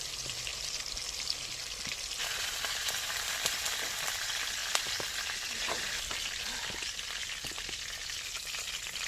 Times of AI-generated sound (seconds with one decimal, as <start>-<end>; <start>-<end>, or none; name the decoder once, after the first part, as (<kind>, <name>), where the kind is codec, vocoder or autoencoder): none